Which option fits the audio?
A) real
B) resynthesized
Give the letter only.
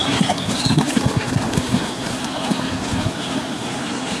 B